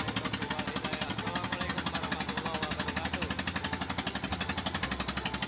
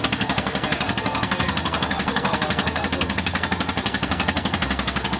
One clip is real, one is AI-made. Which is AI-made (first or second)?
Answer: second